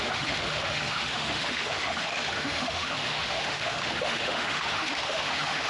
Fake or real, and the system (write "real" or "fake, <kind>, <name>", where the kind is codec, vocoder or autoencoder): fake, autoencoder, DAC-VAE